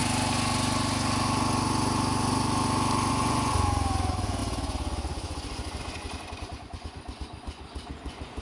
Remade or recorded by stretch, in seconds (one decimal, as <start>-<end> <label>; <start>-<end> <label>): 0.0-3.1 recorded; 3.1-8.4 remade